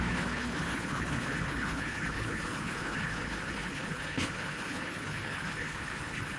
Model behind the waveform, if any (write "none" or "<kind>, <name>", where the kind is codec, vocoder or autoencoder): codec, HILCodec